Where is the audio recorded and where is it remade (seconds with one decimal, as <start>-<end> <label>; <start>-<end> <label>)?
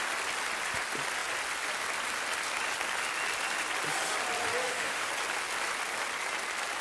0.0-4.6 recorded; 4.6-5.1 remade; 5.1-6.8 recorded